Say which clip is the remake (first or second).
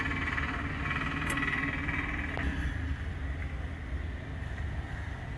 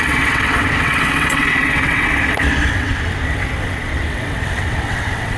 second